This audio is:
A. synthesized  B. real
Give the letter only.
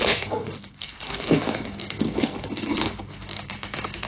A